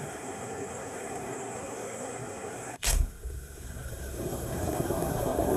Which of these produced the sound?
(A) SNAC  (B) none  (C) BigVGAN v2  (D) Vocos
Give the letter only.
A